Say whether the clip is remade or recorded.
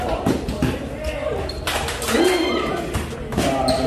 remade